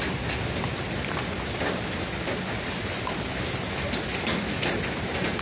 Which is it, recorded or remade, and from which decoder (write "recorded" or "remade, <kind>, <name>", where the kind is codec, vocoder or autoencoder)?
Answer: recorded